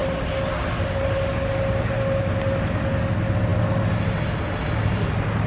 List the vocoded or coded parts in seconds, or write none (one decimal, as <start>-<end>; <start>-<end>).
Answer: none

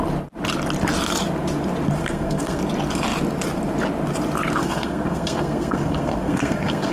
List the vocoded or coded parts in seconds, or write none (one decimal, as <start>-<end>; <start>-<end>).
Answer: 2.0-2.6; 4.6-6.9